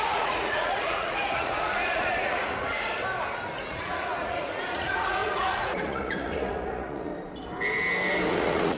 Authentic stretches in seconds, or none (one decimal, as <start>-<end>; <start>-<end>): 3.0-3.7; 7.1-8.3